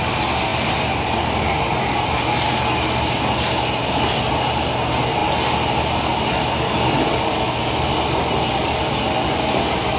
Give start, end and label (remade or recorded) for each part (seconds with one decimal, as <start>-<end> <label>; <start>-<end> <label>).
0.0-10.0 recorded